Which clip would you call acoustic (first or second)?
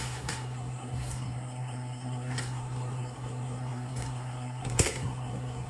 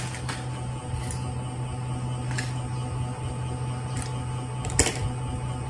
second